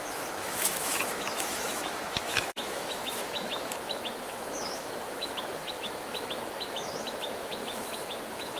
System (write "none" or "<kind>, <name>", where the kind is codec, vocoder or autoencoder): autoencoder, DAC-VAE